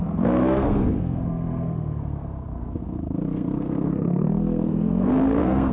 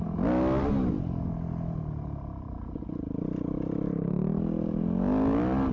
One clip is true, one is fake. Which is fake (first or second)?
first